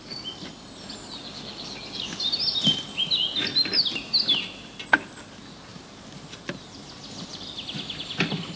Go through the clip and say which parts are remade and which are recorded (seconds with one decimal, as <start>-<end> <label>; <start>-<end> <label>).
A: 0.0-2.7 recorded; 2.7-3.5 remade; 3.5-7.3 recorded; 7.3-8.6 remade

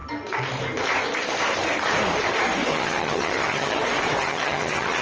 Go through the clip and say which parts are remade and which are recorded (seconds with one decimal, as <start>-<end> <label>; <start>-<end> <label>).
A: 0.0-2.7 recorded; 2.7-3.8 remade; 3.8-4.2 recorded; 4.2-5.0 remade

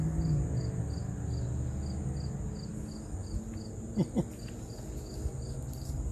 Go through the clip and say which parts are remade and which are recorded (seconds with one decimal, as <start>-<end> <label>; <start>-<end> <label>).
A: 0.0-6.1 recorded